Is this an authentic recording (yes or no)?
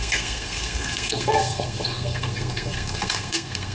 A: no